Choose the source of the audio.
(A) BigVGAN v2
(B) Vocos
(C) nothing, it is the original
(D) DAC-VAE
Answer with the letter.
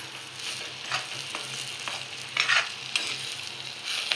C